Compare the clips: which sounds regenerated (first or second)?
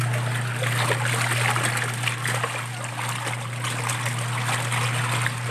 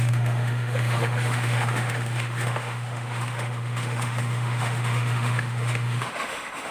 second